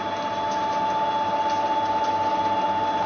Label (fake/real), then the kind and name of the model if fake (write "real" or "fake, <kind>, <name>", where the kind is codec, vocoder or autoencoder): real